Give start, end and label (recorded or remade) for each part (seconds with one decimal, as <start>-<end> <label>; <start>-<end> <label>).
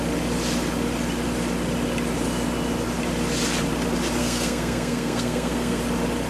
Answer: 0.0-4.2 recorded; 4.2-5.8 remade; 5.8-6.3 recorded